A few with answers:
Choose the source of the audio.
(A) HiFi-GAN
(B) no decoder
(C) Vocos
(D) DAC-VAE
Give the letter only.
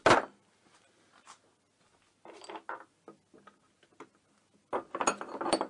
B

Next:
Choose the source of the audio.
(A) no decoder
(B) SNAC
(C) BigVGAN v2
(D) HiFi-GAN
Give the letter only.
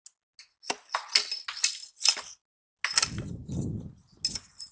A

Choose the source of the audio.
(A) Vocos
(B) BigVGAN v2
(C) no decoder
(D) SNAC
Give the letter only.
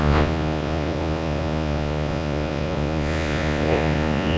A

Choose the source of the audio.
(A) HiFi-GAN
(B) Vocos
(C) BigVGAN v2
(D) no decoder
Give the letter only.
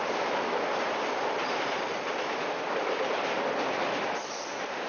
D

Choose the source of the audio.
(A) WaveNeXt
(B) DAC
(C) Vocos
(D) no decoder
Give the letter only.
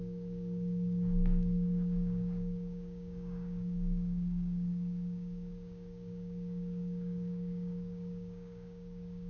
B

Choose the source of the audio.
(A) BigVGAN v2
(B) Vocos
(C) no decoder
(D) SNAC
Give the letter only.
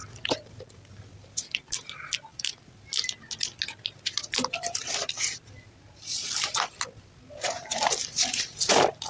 C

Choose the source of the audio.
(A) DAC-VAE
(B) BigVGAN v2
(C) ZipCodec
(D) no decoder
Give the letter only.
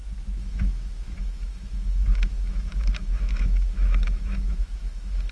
A